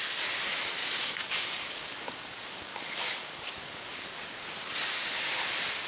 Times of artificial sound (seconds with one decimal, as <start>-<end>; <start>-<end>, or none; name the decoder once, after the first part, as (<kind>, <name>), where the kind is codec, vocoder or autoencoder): 0.8-4.3 (codec, DAC)

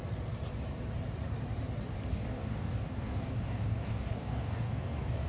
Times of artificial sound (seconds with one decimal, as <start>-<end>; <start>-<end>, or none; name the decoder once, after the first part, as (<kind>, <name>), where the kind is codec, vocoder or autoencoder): 2.1-5.3 (codec, DAC)

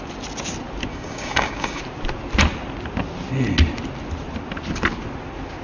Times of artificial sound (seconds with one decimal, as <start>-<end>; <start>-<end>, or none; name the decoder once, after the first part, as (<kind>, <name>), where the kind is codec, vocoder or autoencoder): 0.9-1.8 (codec, DAC)

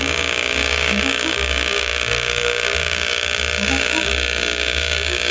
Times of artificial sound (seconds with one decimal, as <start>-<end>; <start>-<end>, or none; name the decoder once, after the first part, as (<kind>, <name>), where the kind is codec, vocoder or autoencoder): 0.0-5.3 (codec, DAC)

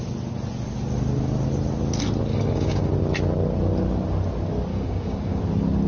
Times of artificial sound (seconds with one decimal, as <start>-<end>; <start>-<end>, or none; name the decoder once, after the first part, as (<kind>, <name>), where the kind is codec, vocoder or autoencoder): 2.3-2.9 (codec, DAC); 4.7-5.4

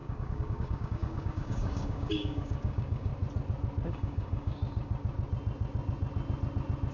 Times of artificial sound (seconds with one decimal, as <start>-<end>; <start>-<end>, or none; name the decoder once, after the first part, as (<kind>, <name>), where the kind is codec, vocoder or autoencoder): 0.0-3.1 (codec, DAC); 3.9-4.6

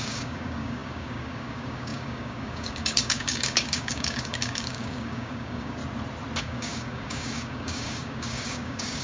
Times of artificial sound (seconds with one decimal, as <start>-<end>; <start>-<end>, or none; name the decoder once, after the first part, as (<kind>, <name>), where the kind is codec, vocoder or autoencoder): 0.0-5.8 (codec, DAC); 6.4-9.0